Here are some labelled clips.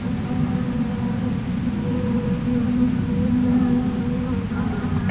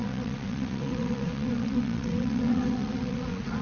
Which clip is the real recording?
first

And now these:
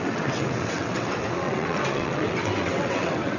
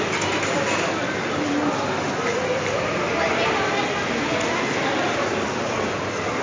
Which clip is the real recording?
second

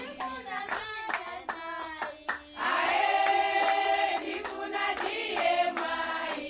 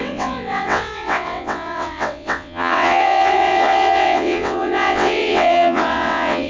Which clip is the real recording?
first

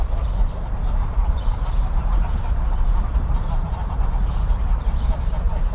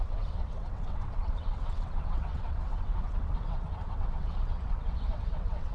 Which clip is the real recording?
first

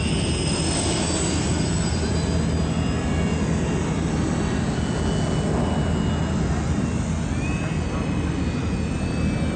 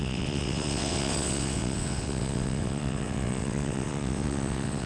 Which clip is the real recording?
first